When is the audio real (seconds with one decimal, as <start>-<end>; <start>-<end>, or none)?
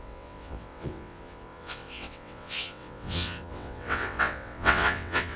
none